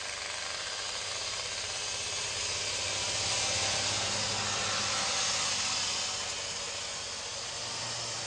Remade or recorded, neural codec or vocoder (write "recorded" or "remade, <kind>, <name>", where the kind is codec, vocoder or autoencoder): recorded